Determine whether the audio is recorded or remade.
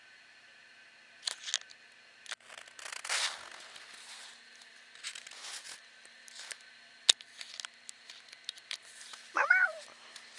recorded